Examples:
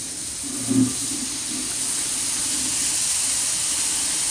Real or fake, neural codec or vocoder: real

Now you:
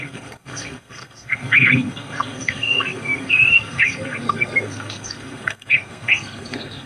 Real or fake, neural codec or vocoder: fake, codec, SNAC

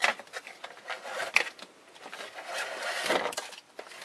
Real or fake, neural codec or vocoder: real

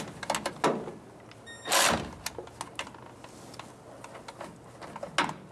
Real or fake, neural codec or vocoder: real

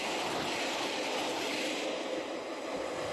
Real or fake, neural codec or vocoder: real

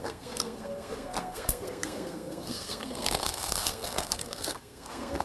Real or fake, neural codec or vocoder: fake, codec, SNAC